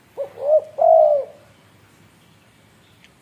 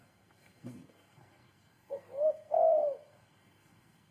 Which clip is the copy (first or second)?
second